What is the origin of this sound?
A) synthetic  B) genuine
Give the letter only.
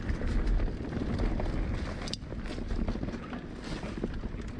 B